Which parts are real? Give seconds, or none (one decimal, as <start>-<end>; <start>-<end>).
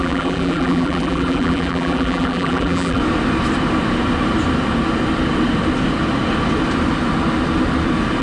3.0-8.2